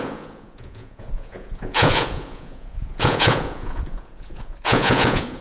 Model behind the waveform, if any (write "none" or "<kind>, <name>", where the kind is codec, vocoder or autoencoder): vocoder, Vocos